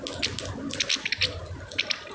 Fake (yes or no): no